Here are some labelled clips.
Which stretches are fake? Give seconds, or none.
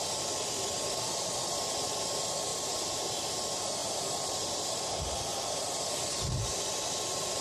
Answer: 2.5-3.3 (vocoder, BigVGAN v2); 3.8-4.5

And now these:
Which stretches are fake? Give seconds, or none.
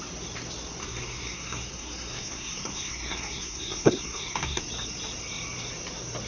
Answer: 0.8-4.6 (codec, SNAC)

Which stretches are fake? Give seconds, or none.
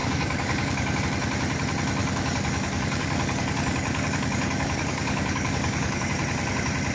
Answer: 0.0-1.0 (codec, DAC); 2.0-6.1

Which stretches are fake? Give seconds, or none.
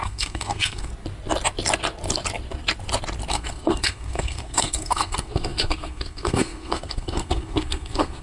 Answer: 0.0-0.9 (codec, SNAC); 3.3-8.2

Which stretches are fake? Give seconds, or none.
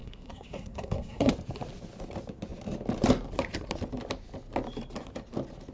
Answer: 0.0-1.3 (codec, SNAC)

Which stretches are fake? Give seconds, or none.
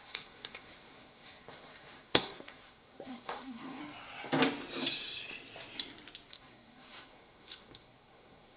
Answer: 0.0-3.8 (codec, SNAC); 6.3-8.6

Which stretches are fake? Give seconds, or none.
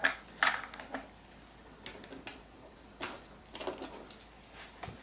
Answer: 2.3-3.6 (vocoder, BigVGAN v2)